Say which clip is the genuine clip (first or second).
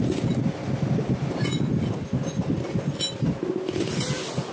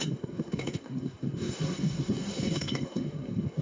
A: first